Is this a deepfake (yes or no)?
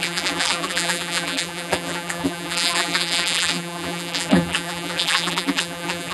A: yes